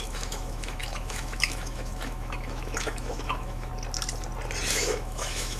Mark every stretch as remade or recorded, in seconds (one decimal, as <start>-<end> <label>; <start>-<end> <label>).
0.0-3.7 remade; 3.7-4.7 recorded; 4.7-5.6 remade